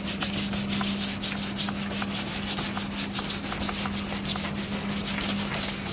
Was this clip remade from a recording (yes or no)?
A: no